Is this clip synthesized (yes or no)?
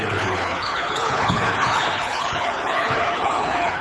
yes